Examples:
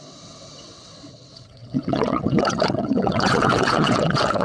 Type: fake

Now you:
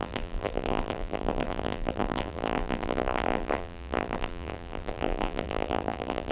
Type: fake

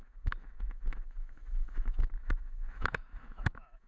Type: fake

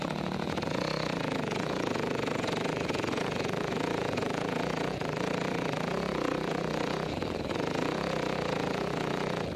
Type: fake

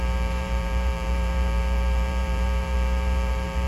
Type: fake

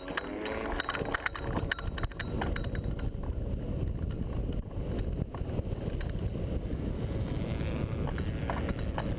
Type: real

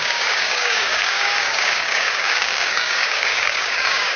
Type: fake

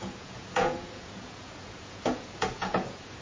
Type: fake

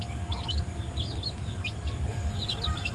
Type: fake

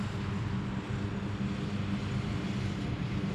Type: real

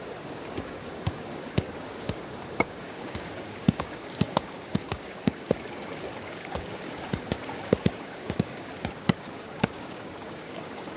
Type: fake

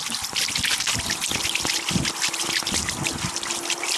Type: real